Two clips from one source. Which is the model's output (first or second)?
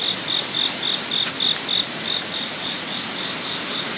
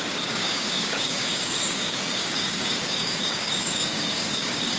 second